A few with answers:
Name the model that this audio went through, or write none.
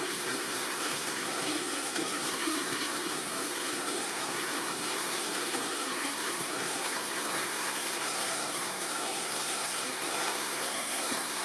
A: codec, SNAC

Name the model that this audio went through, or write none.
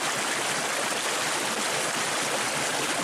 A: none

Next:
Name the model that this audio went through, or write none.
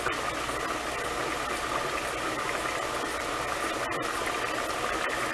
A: none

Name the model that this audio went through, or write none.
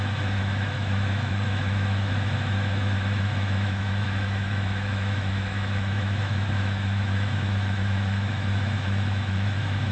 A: autoencoder, DAC-VAE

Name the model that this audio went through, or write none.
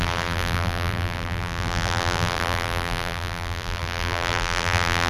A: vocoder, BigVGAN v2